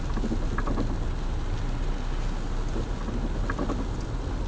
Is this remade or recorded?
recorded